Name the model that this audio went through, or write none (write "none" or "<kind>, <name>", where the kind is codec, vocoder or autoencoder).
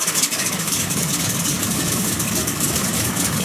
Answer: codec, DAC